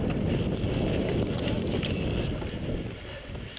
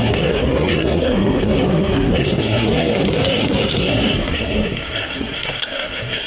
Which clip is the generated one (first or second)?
second